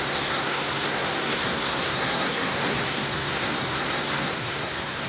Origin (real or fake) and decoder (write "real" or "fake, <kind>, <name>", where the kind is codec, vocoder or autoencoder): fake, codec, SNAC